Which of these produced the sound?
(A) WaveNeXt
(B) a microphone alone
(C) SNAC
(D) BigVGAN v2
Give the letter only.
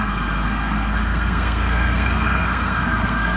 C